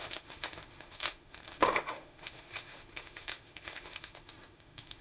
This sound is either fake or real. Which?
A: fake